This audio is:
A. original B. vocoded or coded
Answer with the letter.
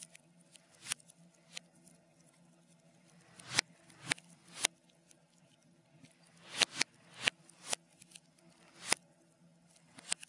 A